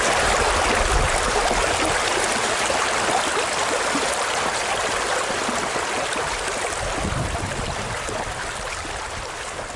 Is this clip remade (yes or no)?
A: no